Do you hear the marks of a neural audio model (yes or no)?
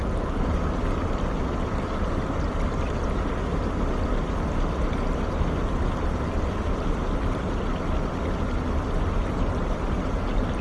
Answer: no